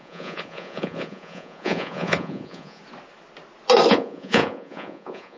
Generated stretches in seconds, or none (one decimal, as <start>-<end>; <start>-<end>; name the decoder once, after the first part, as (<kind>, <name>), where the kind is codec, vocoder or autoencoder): 0.0-2.8 (vocoder, Vocos); 3.9-5.4